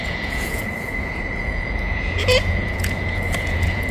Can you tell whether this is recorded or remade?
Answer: remade